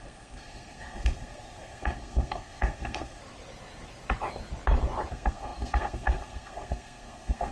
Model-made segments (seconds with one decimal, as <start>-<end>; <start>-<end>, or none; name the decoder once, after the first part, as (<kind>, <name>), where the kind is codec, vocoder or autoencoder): 0.0-3.2 (codec, SNAC); 5.1-7.5